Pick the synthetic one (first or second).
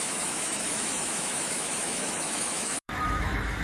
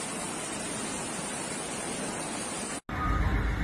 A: first